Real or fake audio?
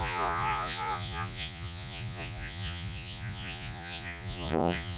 fake